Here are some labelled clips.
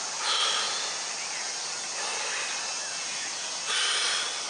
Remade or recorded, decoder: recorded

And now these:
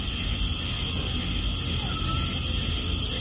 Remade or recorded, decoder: recorded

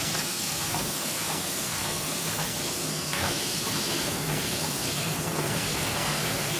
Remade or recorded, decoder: remade, codec, SNAC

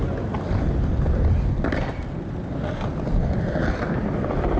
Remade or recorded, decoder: recorded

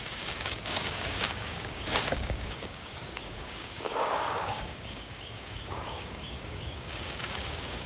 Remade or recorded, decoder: remade, codec, DAC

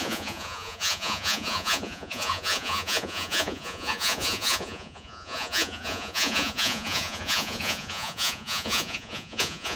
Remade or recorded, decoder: remade, vocoder, Vocos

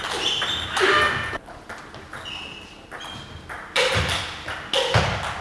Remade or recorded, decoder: recorded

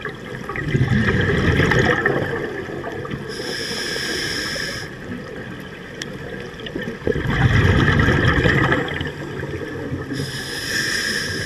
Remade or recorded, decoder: recorded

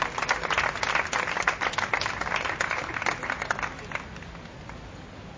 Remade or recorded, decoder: recorded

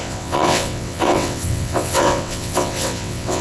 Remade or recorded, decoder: remade, vocoder, WaveNeXt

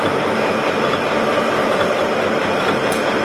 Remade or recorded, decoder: remade, vocoder, BigVGAN v2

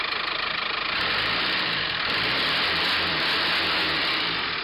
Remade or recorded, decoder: remade, vocoder, BigVGAN v2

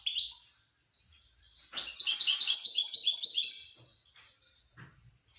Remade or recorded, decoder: recorded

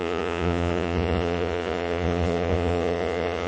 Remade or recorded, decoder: remade, vocoder, Vocos